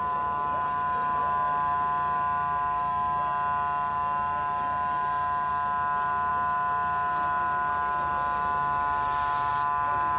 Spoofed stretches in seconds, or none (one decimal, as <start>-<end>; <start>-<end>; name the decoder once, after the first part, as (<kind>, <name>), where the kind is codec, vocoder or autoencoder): none